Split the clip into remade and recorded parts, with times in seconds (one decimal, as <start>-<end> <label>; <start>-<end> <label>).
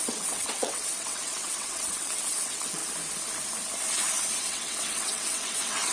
0.0-2.8 remade; 2.8-4.4 recorded; 4.4-5.9 remade